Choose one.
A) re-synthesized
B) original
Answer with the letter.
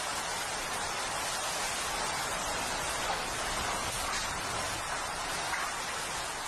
B